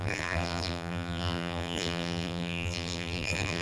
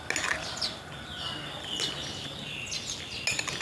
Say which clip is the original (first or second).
second